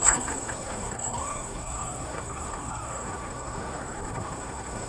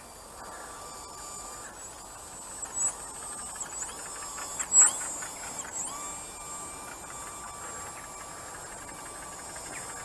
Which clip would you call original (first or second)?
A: second